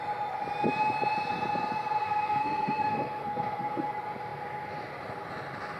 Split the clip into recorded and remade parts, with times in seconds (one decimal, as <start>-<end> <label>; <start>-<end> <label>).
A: 0.0-2.0 recorded; 2.0-3.9 remade; 3.9-5.8 recorded